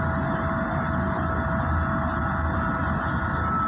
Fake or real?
real